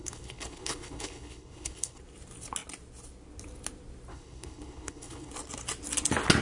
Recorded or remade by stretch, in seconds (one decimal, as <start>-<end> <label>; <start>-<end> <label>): 0.0-2.0 remade; 2.0-4.1 recorded; 4.1-5.3 remade; 5.3-6.4 recorded